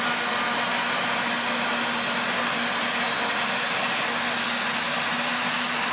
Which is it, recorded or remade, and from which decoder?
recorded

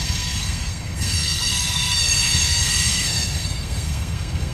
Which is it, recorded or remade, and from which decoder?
remade, codec, SNAC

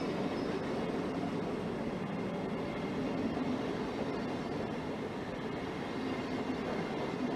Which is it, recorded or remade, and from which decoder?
recorded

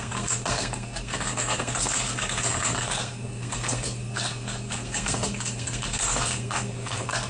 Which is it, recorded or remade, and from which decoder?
remade, codec, SNAC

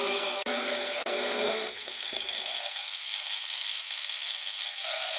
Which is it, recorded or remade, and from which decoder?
remade, codec, SNAC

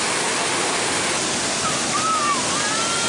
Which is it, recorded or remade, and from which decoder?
recorded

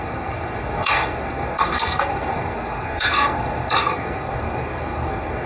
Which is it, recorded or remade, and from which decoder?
remade, codec, SNAC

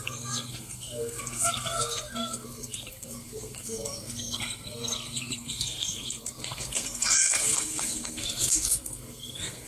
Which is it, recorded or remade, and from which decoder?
remade, codec, SNAC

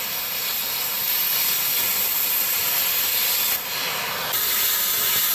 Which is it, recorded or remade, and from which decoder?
recorded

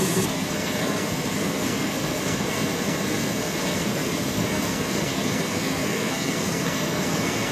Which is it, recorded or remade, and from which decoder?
remade, codec, SNAC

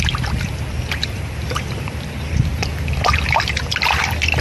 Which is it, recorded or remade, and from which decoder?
recorded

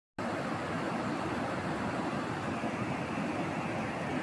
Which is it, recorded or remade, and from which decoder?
recorded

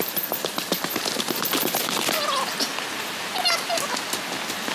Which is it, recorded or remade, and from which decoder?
recorded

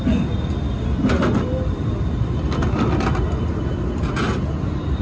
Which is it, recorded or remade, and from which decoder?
recorded